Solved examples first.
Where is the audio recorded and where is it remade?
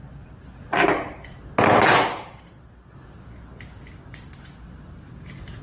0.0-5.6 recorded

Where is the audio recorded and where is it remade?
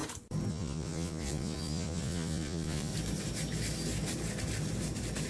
0.0-0.5 recorded; 0.5-2.9 remade; 2.9-5.3 recorded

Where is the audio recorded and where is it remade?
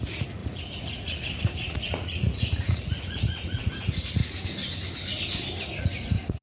0.0-4.2 remade; 4.2-5.8 recorded; 5.8-6.4 remade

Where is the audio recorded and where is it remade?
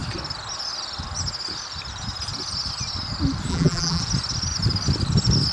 0.0-3.5 recorded; 3.5-4.0 remade; 4.0-5.5 recorded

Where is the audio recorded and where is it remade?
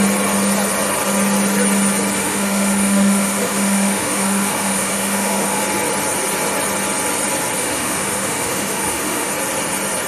0.0-2.2 recorded; 2.2-5.6 remade; 5.6-7.6 recorded; 7.6-9.3 remade; 9.3-10.1 recorded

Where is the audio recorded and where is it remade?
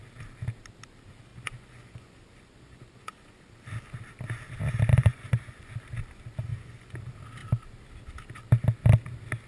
0.0-1.3 recorded; 1.3-3.4 remade; 3.4-4.9 recorded; 4.9-5.7 remade; 5.7-6.5 recorded; 6.5-7.0 remade; 7.0-9.5 recorded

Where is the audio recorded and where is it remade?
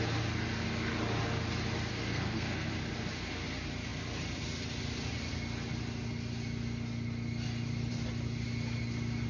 0.0-1.9 recorded; 1.9-2.7 remade; 2.7-9.3 recorded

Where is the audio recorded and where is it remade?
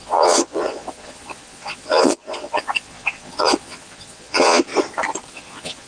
0.0-4.7 remade; 4.7-5.3 recorded; 5.3-5.9 remade